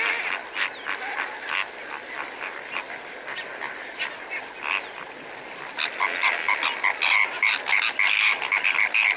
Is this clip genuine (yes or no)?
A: yes